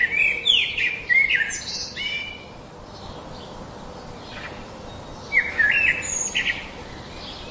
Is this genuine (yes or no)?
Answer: yes